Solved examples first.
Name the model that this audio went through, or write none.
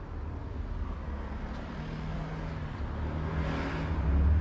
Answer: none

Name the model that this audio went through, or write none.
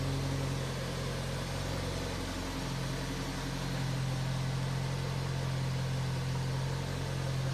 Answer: none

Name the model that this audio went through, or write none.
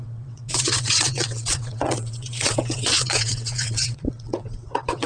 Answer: vocoder, WaveNeXt